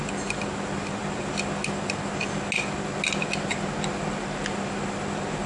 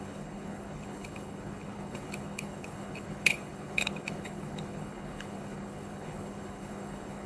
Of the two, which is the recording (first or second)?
first